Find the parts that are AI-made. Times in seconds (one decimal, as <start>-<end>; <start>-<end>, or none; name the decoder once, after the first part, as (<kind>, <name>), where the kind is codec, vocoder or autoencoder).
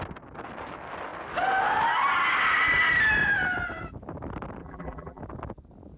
4.6-5.2 (vocoder, BigVGAN v2)